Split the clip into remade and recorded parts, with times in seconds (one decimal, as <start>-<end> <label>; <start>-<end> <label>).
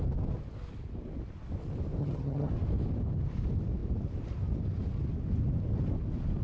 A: 0.0-2.0 recorded; 2.0-2.5 remade; 2.5-6.4 recorded